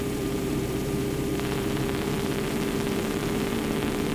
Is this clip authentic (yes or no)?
no